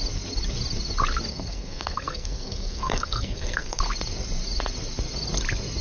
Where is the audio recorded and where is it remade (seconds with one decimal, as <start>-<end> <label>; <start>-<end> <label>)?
0.0-1.3 recorded; 1.3-3.8 remade; 3.8-5.8 recorded